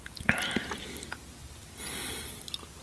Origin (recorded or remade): recorded